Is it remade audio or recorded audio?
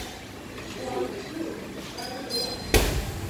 recorded